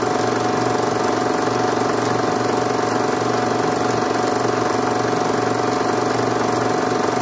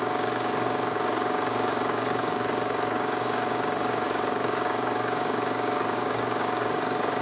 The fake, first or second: second